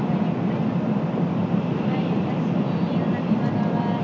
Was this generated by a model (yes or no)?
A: no